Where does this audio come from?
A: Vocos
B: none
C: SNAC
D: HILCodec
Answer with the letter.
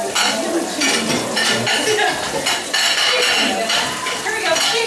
B